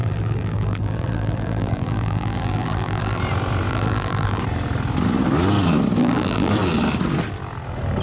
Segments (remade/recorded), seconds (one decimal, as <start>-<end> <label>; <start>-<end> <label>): 0.0-3.2 remade; 3.2-3.7 recorded; 3.7-4.4 remade; 4.4-6.0 recorded; 6.0-6.5 remade; 6.5-8.0 recorded